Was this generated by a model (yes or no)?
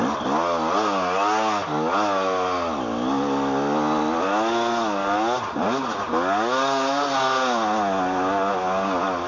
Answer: no